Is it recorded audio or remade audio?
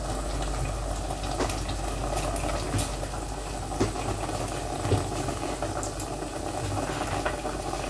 recorded